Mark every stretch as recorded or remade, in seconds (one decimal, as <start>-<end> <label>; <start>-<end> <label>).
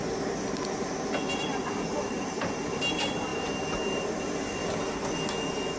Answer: 0.0-2.0 recorded; 2.0-4.6 remade; 4.6-5.8 recorded